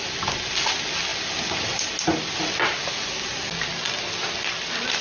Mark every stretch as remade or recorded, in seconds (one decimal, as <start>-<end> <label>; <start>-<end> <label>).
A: 0.0-5.0 recorded